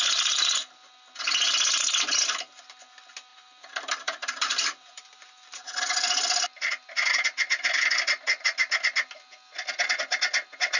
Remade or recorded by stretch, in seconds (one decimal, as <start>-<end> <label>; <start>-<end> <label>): 0.0-3.3 recorded; 3.3-5.8 remade; 5.8-10.8 recorded